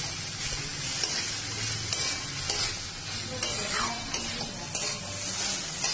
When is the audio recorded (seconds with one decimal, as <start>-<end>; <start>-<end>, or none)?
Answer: 0.0-5.9